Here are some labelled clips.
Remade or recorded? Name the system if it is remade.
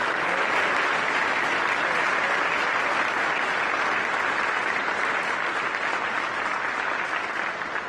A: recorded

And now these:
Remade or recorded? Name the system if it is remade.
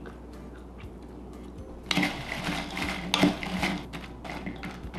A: recorded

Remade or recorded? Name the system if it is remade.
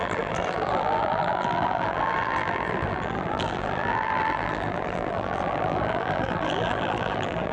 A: remade, vocoder, BigVGAN v2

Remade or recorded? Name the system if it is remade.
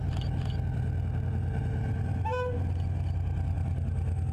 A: recorded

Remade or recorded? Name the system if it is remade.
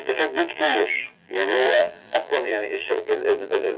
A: remade, vocoder, BigVGAN v2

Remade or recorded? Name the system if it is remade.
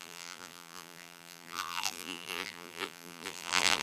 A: remade, vocoder, BigVGAN v2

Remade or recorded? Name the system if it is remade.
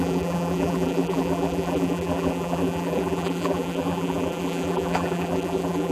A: remade, vocoder, BigVGAN v2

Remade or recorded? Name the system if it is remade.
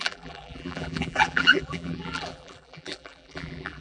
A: remade, vocoder, BigVGAN v2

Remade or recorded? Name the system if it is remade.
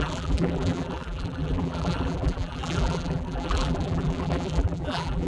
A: remade, vocoder, BigVGAN v2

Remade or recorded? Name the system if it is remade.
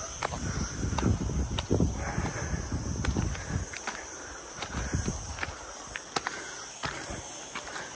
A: recorded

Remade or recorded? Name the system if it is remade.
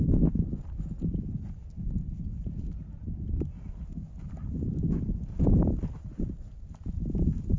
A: recorded